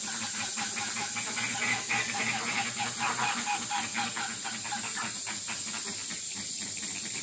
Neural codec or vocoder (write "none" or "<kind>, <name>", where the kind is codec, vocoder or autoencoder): none